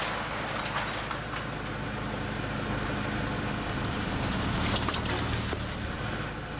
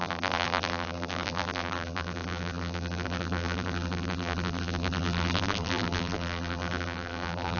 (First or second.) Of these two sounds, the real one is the first